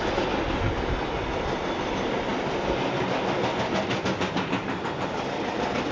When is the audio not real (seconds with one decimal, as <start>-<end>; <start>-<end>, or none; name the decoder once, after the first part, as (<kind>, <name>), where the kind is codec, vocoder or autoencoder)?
none